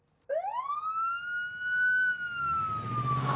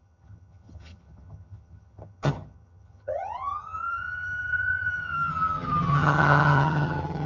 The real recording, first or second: first